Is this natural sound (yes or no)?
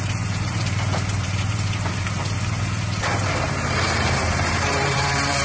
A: no